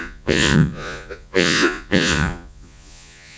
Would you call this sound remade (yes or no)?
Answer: yes